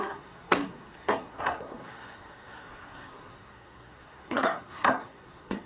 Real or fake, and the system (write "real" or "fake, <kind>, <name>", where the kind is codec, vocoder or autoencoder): fake, codec, SNAC